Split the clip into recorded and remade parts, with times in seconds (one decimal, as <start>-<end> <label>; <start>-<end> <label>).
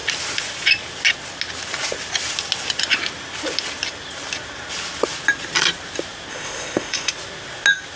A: 0.0-6.3 recorded; 6.3-7.1 remade; 7.1-8.0 recorded